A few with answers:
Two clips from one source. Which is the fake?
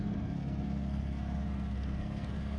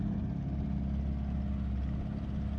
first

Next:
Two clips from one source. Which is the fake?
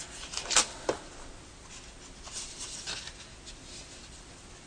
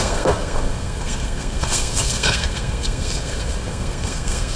second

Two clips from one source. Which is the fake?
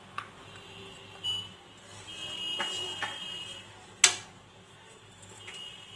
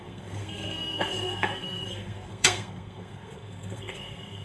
second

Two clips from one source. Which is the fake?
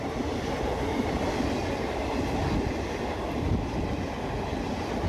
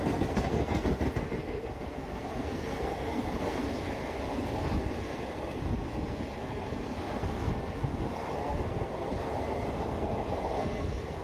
second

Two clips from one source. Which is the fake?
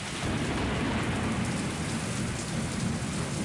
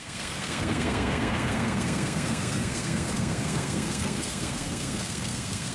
second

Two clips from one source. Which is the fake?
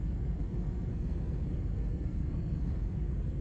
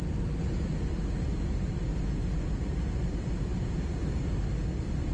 first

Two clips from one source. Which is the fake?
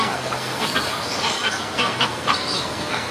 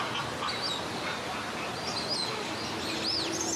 first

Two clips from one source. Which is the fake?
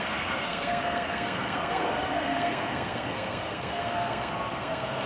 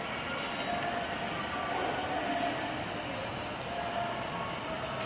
first